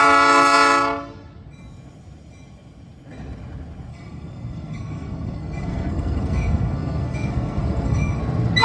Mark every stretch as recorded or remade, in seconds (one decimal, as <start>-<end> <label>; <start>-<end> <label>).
0.0-3.9 recorded; 3.9-8.2 remade; 8.2-8.6 recorded